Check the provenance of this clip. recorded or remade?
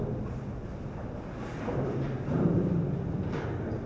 recorded